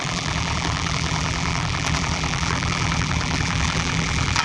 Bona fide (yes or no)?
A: no